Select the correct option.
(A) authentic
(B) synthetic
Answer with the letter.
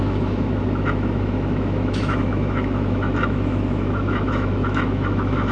B